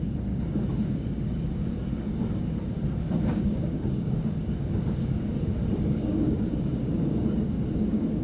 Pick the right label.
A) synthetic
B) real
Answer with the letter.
A